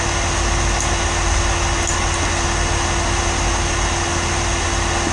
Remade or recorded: recorded